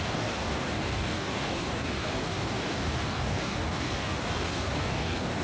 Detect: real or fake fake